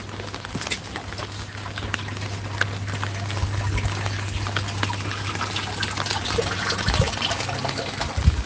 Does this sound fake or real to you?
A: real